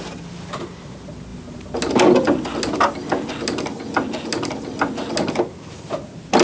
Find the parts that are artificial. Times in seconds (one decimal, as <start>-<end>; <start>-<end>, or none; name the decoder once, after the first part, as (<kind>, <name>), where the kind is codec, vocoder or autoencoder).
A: none